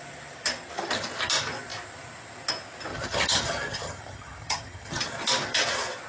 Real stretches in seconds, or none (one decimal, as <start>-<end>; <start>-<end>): 0.0-2.9; 5.0-6.1